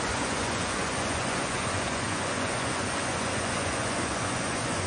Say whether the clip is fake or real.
fake